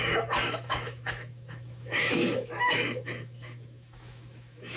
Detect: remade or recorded remade